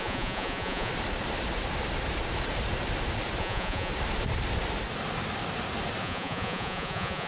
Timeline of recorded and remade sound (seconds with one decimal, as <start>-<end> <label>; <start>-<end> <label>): 0.0-0.9 remade; 0.9-3.4 recorded; 3.4-3.9 remade; 3.9-6.0 recorded; 6.0-7.3 remade

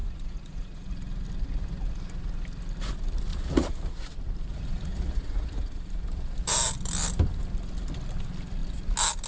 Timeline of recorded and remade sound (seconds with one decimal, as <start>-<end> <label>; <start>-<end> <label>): 0.0-0.9 remade; 0.9-3.3 recorded; 3.3-4.0 remade; 4.0-4.5 recorded; 4.5-5.9 remade; 5.9-9.3 recorded

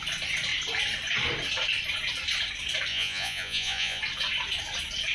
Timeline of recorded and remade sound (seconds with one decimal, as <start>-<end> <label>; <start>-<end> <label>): 0.0-2.9 recorded; 2.9-4.0 remade; 4.0-5.1 recorded